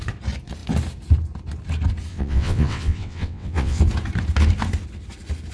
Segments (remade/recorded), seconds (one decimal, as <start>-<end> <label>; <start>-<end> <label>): 0.0-2.1 recorded; 2.1-3.8 remade; 3.8-5.5 recorded